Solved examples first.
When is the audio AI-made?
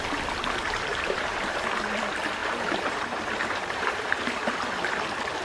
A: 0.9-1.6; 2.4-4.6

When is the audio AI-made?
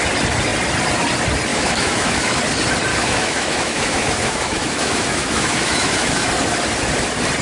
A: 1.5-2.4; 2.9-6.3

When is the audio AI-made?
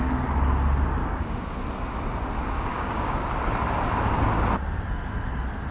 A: 1.0-1.6; 2.7-3.3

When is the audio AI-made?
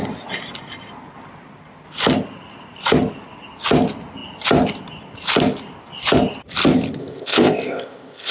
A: 7.0-8.3